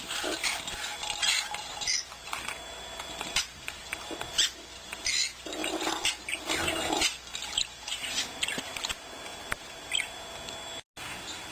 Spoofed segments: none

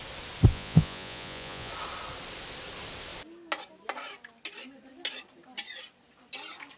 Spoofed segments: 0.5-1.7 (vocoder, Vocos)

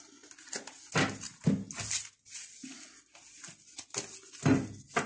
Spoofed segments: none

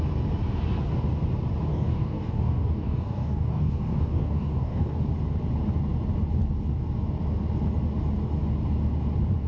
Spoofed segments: 1.7-5.0 (codec, DAC)

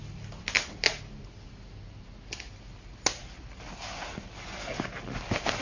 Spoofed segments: none

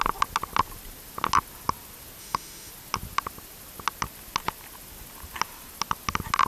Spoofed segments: 2.2-2.7 (autoencoder, DAC-VAE)

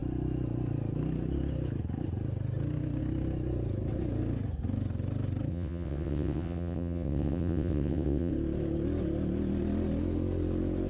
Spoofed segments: 5.5-8.3 (vocoder, WaveNeXt)

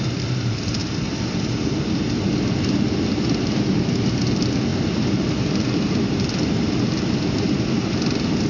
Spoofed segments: none